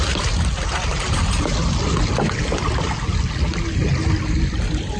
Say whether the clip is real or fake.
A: real